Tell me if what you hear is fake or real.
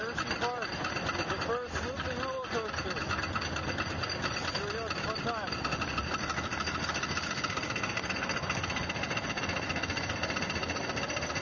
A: real